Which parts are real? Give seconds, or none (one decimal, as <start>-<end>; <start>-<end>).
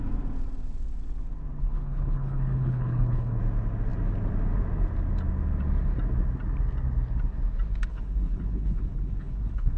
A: 0.0-1.6; 3.4-7.9